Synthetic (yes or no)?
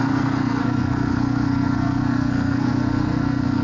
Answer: yes